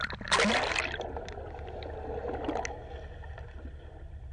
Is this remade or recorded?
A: recorded